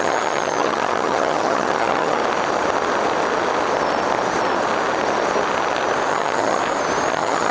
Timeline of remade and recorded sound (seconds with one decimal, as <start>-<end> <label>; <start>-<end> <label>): 0.0-2.2 remade; 2.2-6.1 recorded; 6.1-6.6 remade; 6.6-7.1 recorded; 7.1-7.5 remade